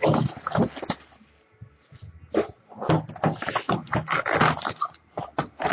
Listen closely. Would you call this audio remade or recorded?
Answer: recorded